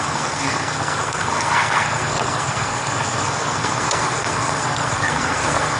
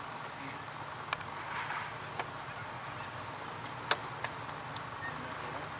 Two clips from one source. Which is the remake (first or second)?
first